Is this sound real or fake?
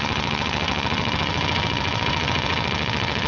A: fake